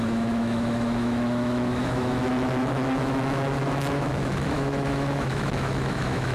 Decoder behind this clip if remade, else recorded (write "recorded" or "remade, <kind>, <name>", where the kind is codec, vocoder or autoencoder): remade, autoencoder, DAC-VAE